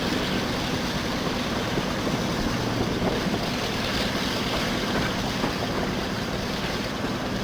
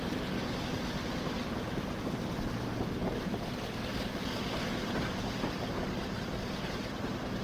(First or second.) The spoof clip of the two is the first